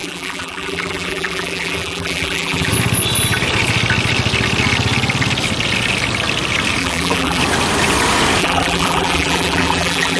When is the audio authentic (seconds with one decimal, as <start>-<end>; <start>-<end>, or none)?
2.7-6.8; 7.4-8.4